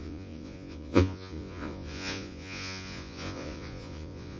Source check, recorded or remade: remade